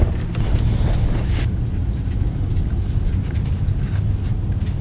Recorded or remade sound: recorded